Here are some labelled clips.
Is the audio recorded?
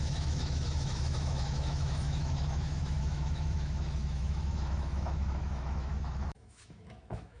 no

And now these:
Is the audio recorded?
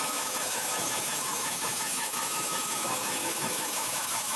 no